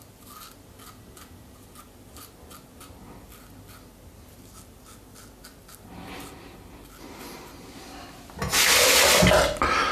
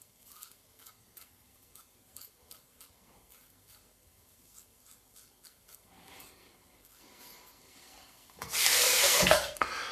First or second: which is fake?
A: second